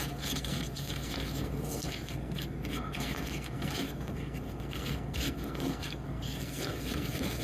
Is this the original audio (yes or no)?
no